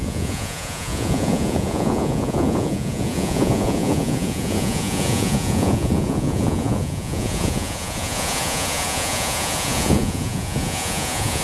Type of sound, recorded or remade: remade